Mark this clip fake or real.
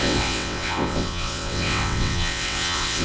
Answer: fake